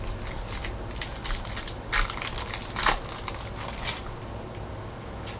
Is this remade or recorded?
recorded